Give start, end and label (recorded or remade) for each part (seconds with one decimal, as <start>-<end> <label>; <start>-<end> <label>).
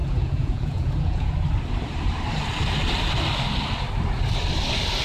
0.0-1.3 remade; 1.3-5.0 recorded